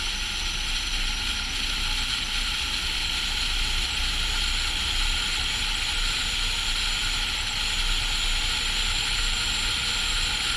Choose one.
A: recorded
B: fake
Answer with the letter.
A